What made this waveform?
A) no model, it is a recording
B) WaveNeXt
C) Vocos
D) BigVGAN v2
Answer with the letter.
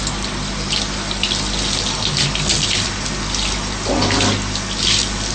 A